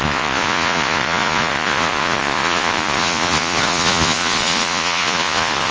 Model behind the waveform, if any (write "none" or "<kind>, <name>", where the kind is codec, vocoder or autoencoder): vocoder, Vocos